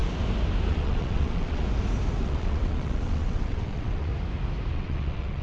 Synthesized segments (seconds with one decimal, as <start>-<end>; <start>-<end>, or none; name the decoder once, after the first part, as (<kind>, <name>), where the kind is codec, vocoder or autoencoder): 0.7-1.6 (vocoder, WaveNeXt); 2.2-4.1; 4.7-5.4